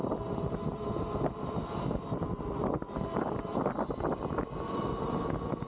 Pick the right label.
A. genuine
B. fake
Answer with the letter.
A